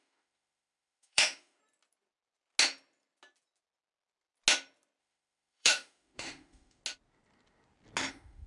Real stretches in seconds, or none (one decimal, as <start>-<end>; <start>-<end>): 1.6-5.0; 6.8-8.1

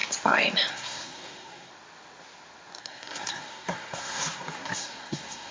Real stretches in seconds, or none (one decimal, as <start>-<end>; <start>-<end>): 0.0-0.7; 1.7-2.8

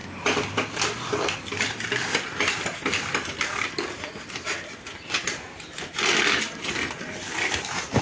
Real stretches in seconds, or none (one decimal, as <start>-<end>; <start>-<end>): 0.0-8.0

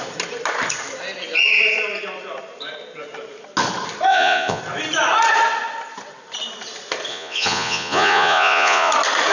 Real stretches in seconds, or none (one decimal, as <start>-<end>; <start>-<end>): 0.0-4.1; 4.6-7.1; 8.9-9.3

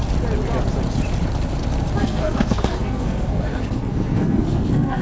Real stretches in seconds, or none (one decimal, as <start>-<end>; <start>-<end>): 0.0-2.0